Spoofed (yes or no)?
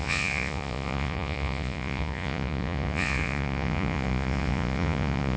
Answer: yes